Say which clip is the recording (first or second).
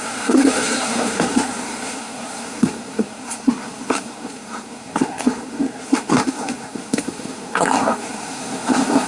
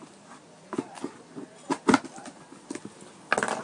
second